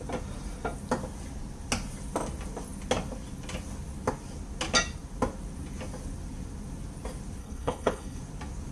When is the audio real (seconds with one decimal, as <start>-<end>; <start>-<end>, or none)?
0.0-7.4; 8.2-8.7